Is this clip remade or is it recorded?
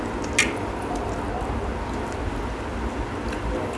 recorded